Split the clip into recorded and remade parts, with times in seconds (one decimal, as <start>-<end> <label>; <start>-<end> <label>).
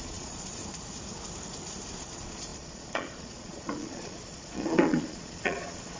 0.0-0.6 remade; 0.6-2.0 recorded; 2.0-6.0 remade